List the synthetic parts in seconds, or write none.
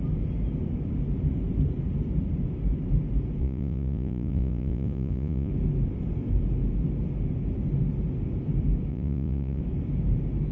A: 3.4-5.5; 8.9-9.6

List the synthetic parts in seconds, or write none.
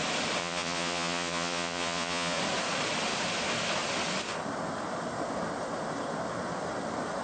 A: 0.4-2.4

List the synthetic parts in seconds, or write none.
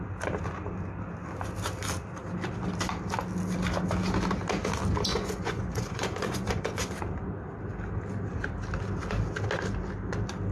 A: 5.1-6.8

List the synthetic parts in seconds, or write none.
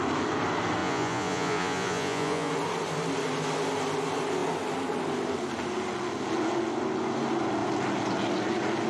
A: 0.8-2.5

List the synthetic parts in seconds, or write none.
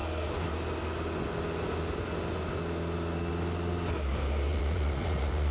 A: 4.5-5.5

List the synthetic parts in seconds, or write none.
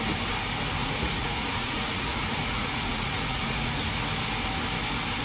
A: 0.8-3.9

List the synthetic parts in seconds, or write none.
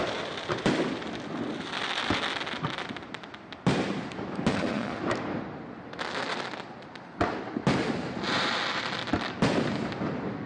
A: 4.5-5.0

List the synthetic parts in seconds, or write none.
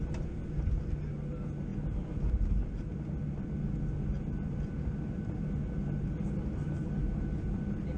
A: none